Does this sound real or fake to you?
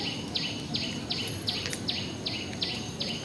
real